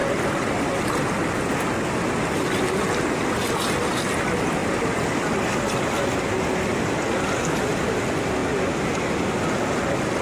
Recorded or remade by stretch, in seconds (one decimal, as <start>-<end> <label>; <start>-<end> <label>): 0.0-10.2 recorded